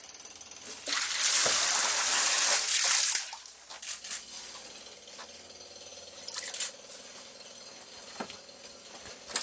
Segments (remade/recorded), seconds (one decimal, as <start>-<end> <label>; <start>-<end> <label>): 0.0-9.4 recorded